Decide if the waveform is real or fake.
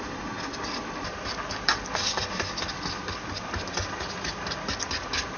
real